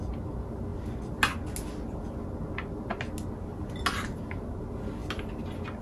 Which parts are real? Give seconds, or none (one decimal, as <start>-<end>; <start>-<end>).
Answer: 0.0-5.8